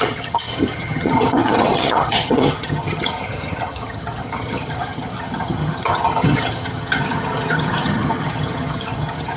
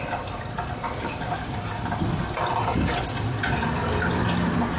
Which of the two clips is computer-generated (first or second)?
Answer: first